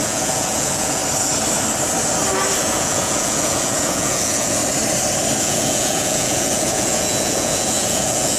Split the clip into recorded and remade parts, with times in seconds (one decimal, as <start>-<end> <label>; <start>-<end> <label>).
0.0-1.0 remade; 1.0-2.6 recorded; 2.6-4.6 remade; 4.6-5.4 recorded; 5.4-8.4 remade